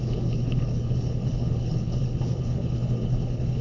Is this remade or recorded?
remade